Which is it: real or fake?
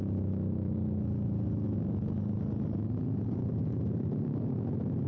real